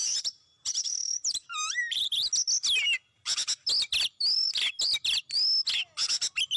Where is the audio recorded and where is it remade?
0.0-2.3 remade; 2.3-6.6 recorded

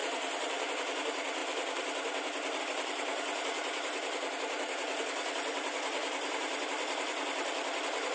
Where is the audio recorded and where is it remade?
0.0-0.7 remade; 0.7-6.0 recorded; 6.0-6.6 remade; 6.6-8.1 recorded

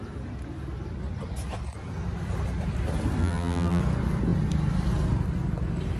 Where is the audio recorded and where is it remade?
0.0-3.2 recorded; 3.2-3.8 remade; 3.8-6.0 recorded